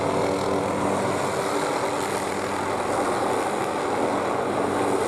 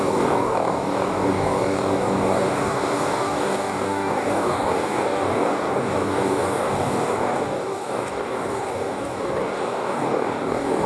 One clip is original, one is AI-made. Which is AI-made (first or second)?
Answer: second